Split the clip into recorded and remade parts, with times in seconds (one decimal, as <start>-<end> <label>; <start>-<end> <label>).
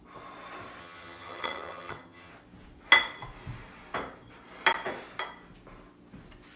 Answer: 0.0-0.8 recorded; 0.8-2.3 remade; 2.3-6.6 recorded